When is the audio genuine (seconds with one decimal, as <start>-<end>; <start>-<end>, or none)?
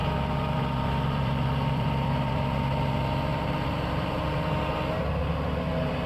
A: 2.5-3.3; 4.7-6.1